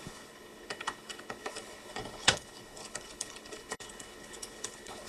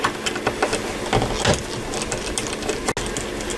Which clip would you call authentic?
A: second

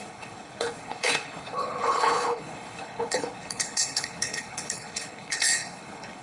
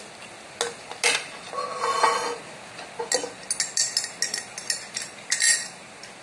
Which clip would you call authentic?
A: second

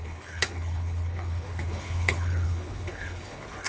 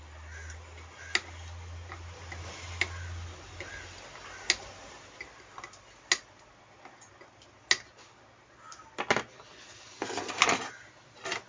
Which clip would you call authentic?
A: second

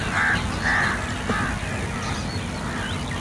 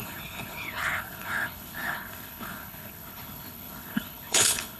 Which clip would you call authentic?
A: first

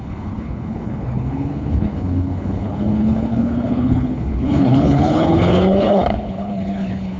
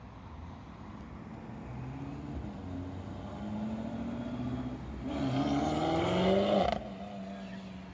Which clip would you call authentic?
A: second